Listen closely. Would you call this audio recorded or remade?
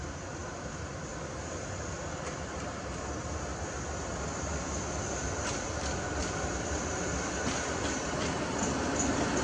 remade